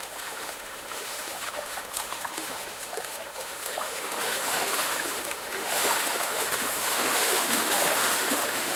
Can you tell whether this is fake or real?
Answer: fake